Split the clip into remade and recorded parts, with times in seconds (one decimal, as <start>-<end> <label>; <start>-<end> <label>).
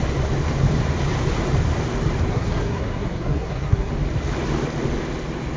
0.0-2.3 recorded; 2.3-3.9 remade; 3.9-5.6 recorded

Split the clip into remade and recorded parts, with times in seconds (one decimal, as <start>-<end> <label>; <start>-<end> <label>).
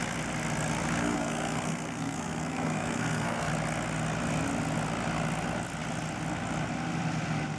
0.0-1.0 recorded; 1.0-3.5 remade; 3.5-7.6 recorded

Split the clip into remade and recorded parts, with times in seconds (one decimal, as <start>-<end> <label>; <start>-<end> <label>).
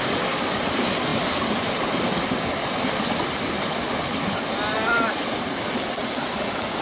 0.0-6.8 recorded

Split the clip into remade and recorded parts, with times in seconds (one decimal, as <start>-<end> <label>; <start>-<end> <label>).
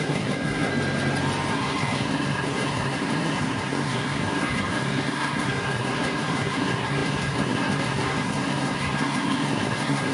0.0-0.7 remade; 0.7-1.5 recorded; 1.5-10.1 remade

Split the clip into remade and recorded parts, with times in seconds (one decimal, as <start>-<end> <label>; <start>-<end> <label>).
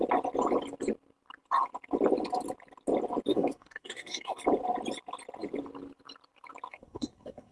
0.0-3.3 recorded; 3.3-4.4 remade; 4.4-6.7 recorded; 6.7-7.5 remade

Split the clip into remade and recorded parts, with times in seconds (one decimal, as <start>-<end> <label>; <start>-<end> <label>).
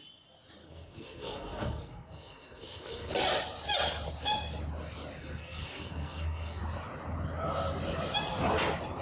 0.0-0.6 recorded; 0.6-3.1 remade; 3.1-5.2 recorded; 5.2-6.6 remade; 6.6-9.0 recorded